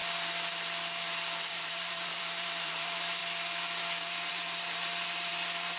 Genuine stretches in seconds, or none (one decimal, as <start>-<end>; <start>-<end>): 0.0-1.5; 3.2-4.3